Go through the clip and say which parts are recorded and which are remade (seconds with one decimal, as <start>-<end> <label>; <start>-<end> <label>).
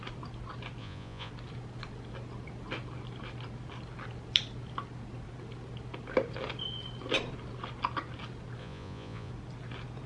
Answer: 0.0-0.8 recorded; 0.8-1.3 remade; 1.3-8.6 recorded; 8.6-9.3 remade; 9.3-10.1 recorded